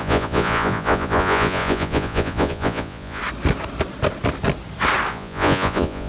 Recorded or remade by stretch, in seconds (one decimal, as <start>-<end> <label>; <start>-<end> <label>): 0.0-3.2 remade; 3.2-5.1 recorded; 5.1-6.1 remade